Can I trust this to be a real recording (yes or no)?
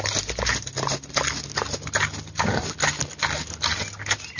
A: yes